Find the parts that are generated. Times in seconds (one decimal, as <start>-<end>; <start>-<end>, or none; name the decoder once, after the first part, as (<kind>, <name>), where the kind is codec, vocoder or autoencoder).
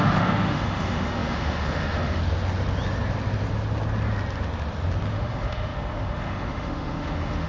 0.0-2.2 (autoencoder, DAC-VAE); 5.1-7.5